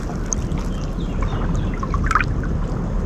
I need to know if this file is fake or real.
real